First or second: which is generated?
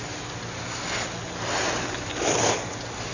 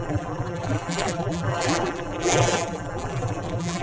second